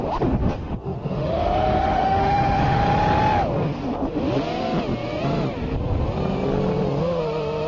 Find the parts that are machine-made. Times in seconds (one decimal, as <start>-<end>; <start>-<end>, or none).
0.4-2.8